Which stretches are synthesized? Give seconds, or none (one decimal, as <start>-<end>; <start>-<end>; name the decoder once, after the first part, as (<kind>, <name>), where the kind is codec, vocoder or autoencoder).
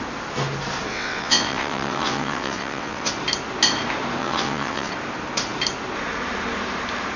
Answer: 0.9-3.1 (vocoder, WaveNeXt); 4.2-4.9